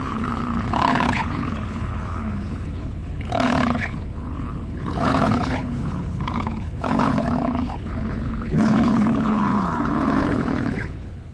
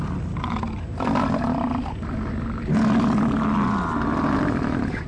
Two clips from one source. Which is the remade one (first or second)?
first